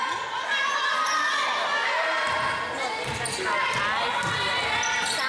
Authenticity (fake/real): real